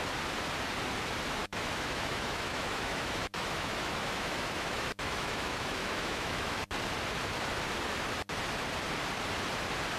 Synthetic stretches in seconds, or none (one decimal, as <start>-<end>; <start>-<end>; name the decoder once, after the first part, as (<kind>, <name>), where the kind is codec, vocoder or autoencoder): 1.4-6.6 (autoencoder, DAC-VAE)